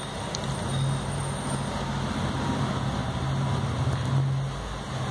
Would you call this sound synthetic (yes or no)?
no